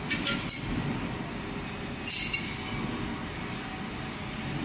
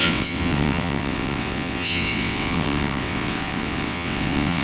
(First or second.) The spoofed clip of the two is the second